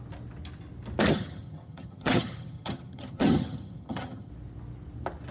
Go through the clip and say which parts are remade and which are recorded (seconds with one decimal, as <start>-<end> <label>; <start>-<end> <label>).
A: 0.0-1.1 recorded; 1.1-4.3 remade; 4.3-5.3 recorded